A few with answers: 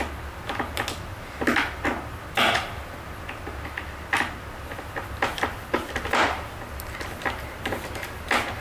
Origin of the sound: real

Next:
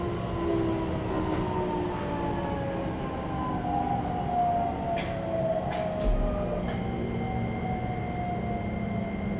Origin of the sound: real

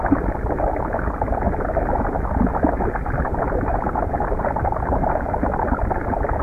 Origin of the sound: real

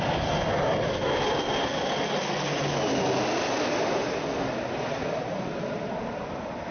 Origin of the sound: real